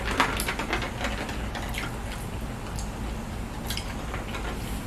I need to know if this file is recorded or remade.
recorded